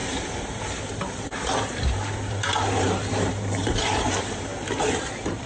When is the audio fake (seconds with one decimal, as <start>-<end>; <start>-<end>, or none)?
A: 0.0-4.5